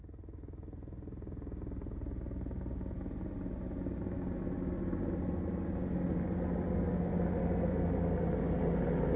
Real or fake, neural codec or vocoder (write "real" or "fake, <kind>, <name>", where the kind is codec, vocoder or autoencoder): real